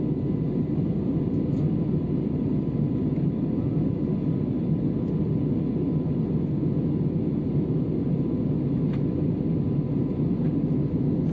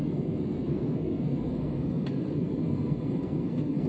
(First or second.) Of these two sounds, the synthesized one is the second